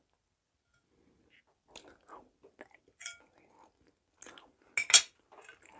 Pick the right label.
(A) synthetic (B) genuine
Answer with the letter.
B